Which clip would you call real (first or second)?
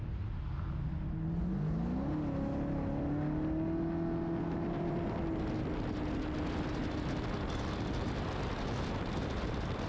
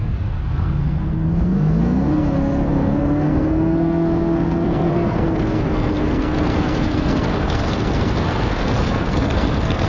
first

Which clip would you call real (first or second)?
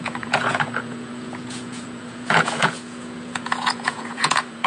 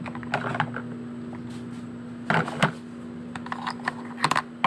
second